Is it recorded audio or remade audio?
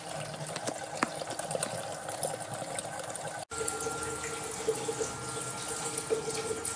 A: recorded